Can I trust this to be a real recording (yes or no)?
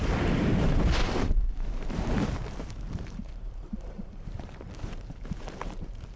no